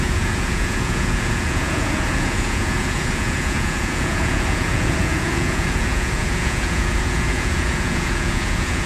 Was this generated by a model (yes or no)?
yes